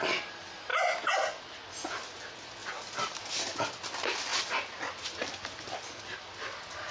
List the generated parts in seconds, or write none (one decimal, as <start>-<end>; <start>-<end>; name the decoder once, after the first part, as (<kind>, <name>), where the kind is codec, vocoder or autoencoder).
none

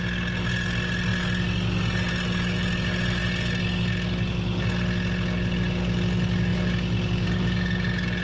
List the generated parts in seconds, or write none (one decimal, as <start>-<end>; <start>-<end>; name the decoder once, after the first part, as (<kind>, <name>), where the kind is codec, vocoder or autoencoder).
none